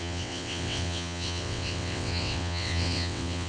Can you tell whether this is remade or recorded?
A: remade